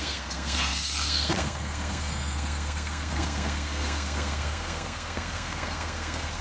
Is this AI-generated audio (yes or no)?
yes